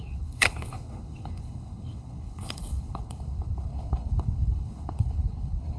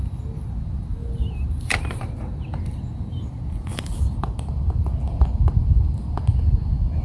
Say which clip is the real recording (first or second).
second